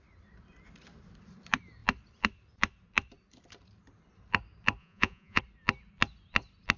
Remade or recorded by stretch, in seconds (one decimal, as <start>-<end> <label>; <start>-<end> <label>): 0.0-4.8 recorded; 4.8-5.4 remade; 5.4-6.8 recorded